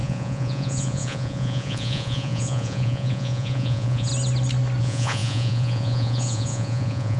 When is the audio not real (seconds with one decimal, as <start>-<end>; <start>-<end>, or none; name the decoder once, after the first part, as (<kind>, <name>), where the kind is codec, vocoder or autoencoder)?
0.0-4.1 (vocoder, Vocos); 4.8-7.2